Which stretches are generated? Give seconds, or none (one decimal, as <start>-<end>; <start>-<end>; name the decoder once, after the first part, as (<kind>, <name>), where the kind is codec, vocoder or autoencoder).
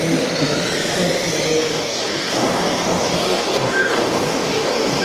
1.7-5.0 (codec, DAC)